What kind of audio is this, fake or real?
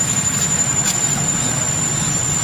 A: real